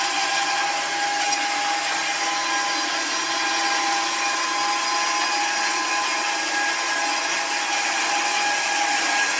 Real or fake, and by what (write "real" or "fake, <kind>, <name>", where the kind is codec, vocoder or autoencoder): real